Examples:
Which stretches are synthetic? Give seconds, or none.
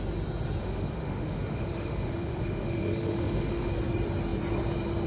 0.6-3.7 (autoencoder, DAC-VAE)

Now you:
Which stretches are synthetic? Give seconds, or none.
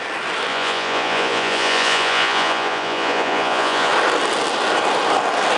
0.5-3.9 (vocoder, Vocos)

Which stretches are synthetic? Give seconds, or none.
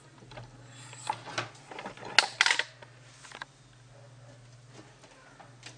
none